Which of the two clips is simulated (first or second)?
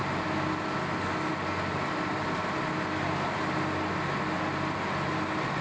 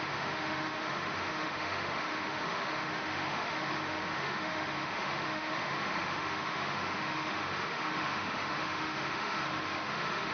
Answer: second